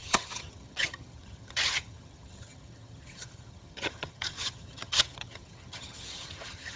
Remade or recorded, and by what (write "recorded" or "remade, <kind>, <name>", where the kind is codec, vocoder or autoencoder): remade, vocoder, HiFi-GAN